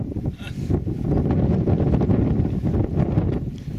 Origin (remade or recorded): recorded